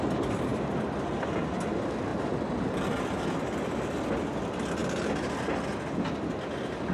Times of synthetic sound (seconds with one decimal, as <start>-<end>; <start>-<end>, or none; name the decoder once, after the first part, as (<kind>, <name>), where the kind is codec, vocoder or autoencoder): 2.1-3.6 (vocoder, BigVGAN v2); 4.8-5.4